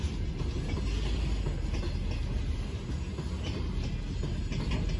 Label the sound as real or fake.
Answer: real